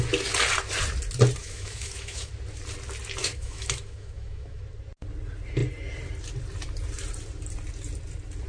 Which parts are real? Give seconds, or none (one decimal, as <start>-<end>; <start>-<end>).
0.0-1.4; 2.3-3.2; 4.6-8.5